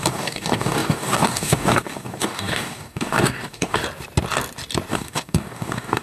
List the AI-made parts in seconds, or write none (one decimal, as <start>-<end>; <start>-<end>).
0.0-3.8; 4.9-6.0